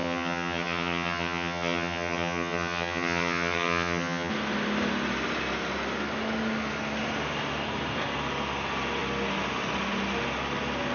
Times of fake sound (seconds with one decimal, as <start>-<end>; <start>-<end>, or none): 0.0-4.3

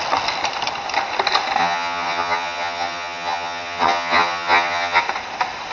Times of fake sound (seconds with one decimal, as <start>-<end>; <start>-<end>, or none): 1.6-5.0

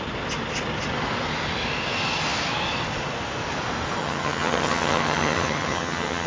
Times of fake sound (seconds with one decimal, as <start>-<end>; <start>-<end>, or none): 4.0-6.3

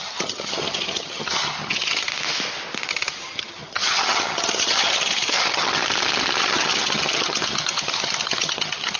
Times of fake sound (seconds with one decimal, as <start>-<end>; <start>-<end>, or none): 0.0-2.1; 2.9-5.8; 6.4-9.0

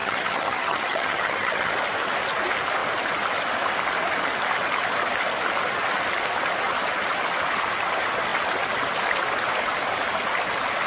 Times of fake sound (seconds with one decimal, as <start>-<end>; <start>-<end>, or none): 0.0-1.7

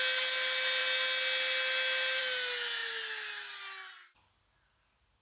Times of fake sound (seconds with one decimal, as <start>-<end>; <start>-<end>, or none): none

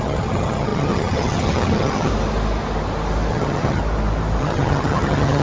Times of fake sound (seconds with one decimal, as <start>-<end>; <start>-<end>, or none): 0.0-2.1; 3.3-3.8; 4.4-5.4